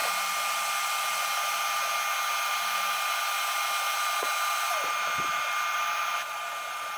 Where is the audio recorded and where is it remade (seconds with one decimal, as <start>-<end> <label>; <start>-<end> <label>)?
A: 0.0-7.0 recorded